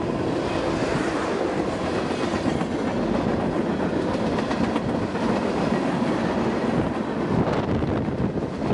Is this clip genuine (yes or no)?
yes